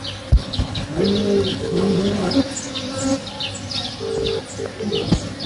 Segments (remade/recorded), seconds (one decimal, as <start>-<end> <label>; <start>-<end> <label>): 0.0-0.4 recorded; 0.4-1.0 remade; 1.0-1.5 recorded; 1.5-2.4 remade; 2.4-5.5 recorded